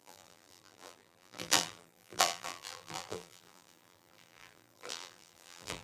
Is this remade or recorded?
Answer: remade